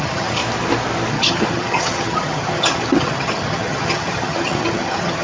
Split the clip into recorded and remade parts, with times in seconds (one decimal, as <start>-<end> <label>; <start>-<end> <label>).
0.0-0.4 remade; 0.4-1.1 recorded; 1.1-5.2 remade